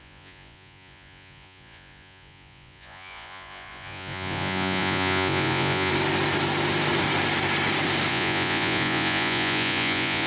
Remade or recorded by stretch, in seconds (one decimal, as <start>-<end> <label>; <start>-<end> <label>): 0.0-5.9 remade; 5.9-8.1 recorded; 8.1-10.3 remade